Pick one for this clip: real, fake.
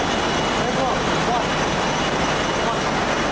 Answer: real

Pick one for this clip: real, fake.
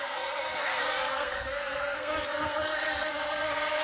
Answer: fake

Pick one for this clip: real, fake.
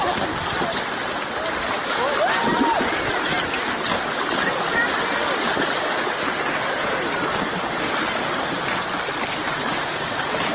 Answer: real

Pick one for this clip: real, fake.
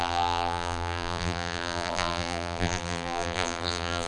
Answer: fake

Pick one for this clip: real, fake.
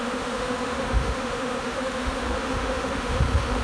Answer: fake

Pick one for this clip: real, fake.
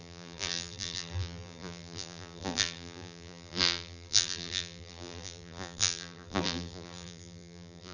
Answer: fake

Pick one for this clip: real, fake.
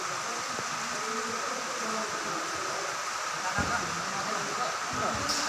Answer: real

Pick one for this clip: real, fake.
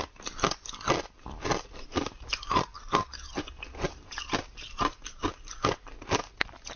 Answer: real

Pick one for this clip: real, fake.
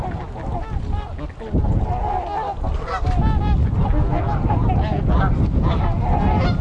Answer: real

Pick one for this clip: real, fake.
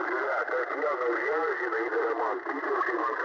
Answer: real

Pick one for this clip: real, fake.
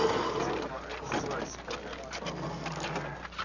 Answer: real